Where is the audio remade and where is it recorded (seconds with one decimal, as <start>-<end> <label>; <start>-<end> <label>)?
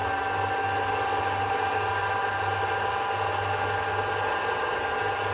0.0-5.3 recorded